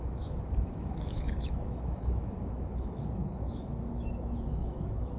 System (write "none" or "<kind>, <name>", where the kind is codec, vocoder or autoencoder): autoencoder, DAC-VAE